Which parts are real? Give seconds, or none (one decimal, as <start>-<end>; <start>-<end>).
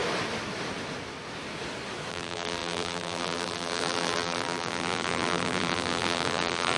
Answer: 0.0-2.1